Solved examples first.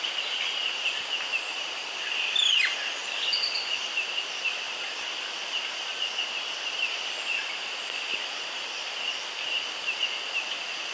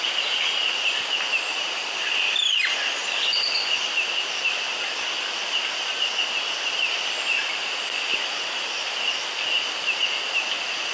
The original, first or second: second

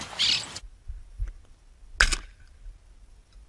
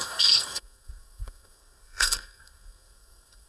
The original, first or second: first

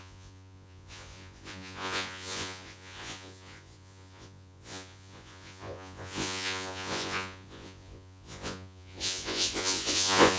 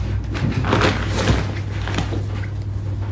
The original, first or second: second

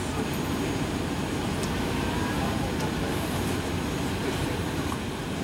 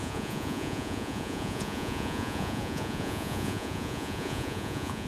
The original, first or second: first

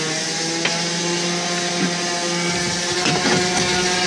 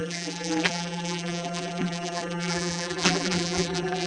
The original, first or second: first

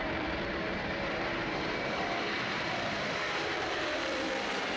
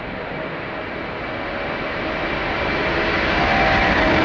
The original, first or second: second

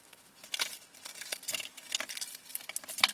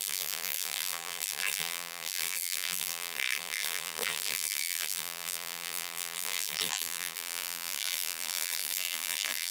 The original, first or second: first